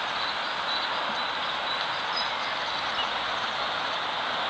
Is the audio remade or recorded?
recorded